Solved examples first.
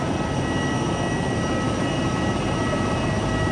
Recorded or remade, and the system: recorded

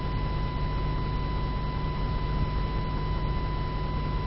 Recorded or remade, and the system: recorded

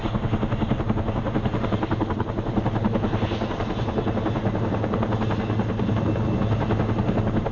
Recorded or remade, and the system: recorded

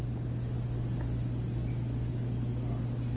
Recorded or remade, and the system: recorded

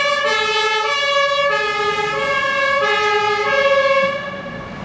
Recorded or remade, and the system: recorded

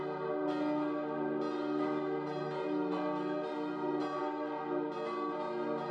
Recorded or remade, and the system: recorded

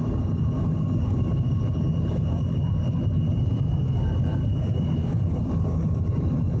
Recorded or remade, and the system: remade, codec, DAC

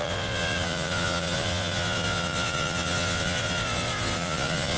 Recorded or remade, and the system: remade, vocoder, Vocos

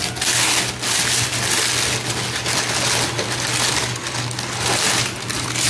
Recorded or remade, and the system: recorded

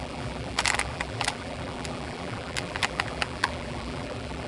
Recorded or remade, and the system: remade, vocoder, BigVGAN v2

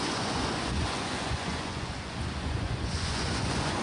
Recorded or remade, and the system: remade, vocoder, Vocos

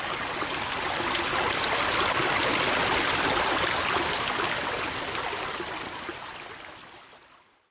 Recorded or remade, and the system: recorded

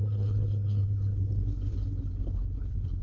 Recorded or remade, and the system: remade, codec, HILCodec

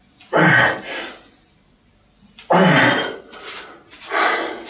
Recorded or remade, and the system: recorded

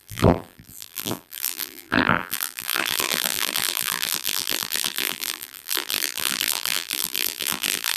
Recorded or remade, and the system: remade, vocoder, BigVGAN v2